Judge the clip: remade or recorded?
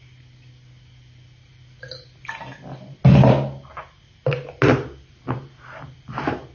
recorded